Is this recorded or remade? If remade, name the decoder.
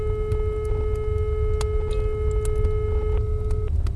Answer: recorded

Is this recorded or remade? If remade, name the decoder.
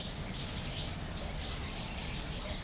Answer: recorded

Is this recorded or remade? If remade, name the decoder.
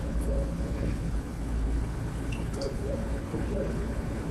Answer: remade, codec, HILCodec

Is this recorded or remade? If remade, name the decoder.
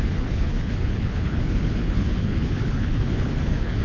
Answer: remade, codec, HILCodec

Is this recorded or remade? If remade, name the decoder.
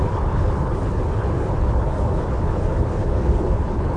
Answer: remade, codec, HILCodec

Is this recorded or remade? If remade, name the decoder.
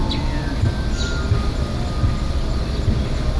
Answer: recorded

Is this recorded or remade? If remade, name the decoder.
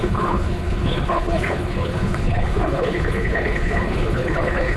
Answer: remade, codec, HILCodec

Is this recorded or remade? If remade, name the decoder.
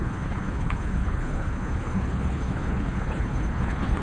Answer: remade, codec, HILCodec